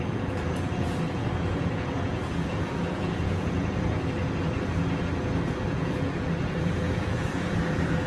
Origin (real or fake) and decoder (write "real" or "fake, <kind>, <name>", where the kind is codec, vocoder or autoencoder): fake, vocoder, Vocos